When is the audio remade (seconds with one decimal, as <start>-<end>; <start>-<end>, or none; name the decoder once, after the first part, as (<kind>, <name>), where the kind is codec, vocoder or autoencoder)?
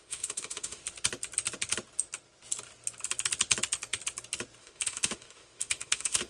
0.0-0.8 (autoencoder, DAC-VAE); 4.6-6.3